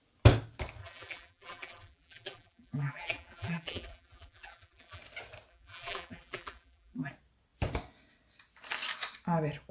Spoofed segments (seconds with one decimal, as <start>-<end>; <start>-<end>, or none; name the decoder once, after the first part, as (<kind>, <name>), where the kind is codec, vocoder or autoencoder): 0.8-5.0 (vocoder, BigVGAN v2); 5.5-7.1